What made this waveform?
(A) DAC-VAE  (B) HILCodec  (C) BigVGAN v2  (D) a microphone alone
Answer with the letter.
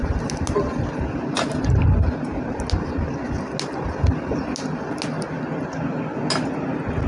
D